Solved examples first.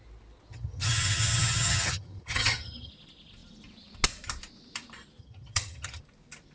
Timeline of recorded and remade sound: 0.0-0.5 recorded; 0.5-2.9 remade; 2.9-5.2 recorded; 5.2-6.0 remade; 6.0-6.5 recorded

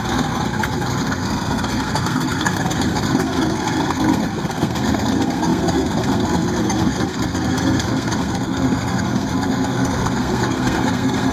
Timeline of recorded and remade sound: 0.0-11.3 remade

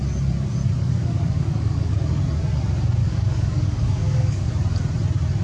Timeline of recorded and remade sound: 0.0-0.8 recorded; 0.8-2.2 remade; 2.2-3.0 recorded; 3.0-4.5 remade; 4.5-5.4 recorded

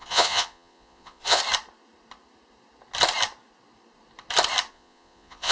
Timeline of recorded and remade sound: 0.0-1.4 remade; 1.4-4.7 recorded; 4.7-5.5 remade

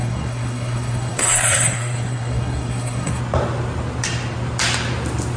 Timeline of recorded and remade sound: 0.0-3.2 remade; 3.2-5.4 recorded

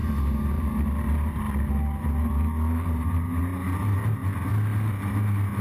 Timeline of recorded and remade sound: 0.0-5.6 recorded